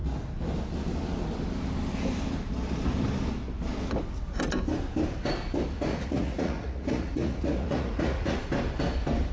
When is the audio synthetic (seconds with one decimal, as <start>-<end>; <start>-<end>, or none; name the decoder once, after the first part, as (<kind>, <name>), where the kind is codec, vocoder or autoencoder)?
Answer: 5.9-8.4 (vocoder, Vocos)